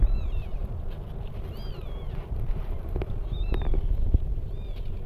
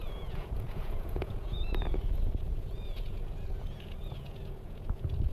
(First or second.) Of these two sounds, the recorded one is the first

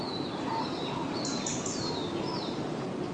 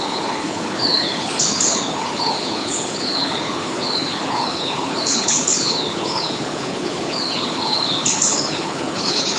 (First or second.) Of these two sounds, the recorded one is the first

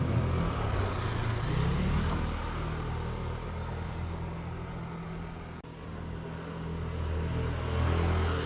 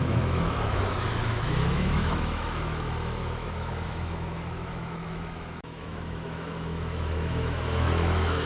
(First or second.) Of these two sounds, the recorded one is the first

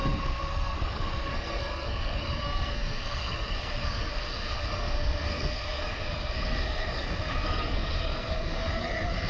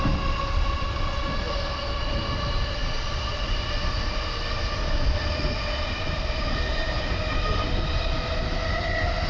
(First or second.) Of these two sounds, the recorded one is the second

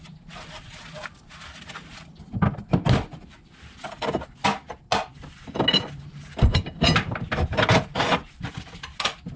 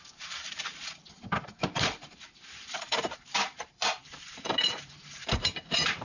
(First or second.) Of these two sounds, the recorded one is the first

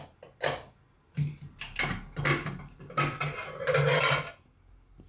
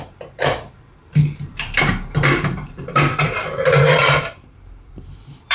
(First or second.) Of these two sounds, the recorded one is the first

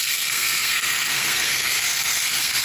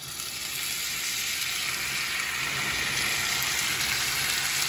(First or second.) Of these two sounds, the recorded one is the second